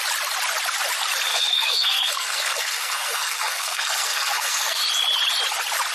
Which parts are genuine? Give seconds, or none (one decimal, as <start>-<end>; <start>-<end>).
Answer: 0.0-1.3; 4.8-5.9